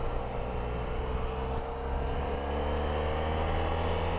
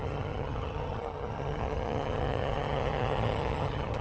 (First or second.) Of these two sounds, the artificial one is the second